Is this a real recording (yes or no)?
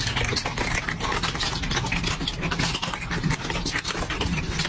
yes